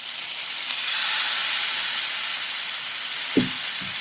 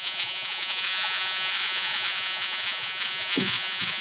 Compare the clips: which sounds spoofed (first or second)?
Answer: second